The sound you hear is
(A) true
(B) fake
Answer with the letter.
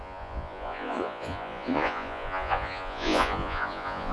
B